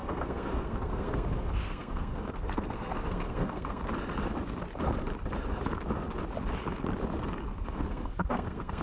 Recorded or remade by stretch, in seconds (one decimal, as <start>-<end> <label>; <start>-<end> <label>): 0.0-3.8 remade; 3.8-7.6 recorded; 7.6-8.8 remade